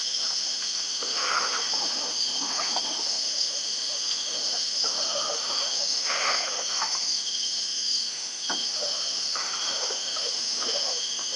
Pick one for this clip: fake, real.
fake